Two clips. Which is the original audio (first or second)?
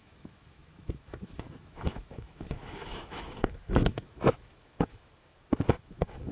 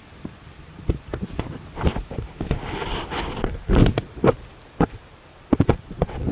second